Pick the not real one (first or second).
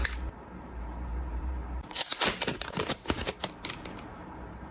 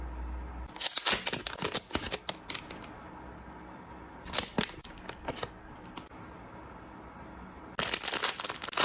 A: first